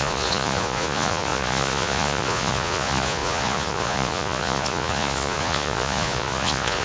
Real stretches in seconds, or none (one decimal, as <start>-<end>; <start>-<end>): none